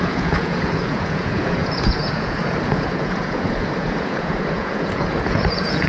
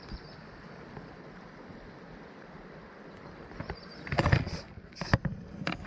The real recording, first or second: second